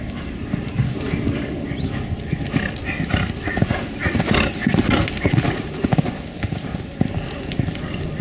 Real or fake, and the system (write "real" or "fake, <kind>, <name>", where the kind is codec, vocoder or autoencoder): real